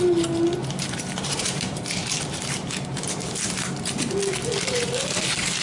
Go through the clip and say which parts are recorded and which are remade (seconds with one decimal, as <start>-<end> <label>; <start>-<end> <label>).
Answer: 0.0-0.6 recorded; 0.6-3.8 remade; 3.8-5.6 recorded